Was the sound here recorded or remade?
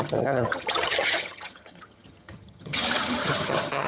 remade